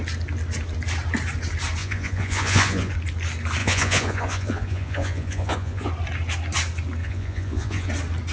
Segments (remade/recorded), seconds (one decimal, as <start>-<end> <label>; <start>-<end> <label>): 0.0-1.8 recorded; 1.8-2.9 remade; 2.9-3.6 recorded; 3.6-5.9 remade; 5.9-7.0 recorded; 7.0-7.9 remade; 7.9-8.3 recorded